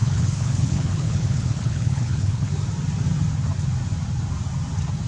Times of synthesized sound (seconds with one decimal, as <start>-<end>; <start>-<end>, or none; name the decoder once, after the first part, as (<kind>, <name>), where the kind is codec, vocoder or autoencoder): 0.0-2.5 (codec, HILCodec)